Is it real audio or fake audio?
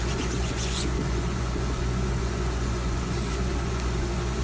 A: fake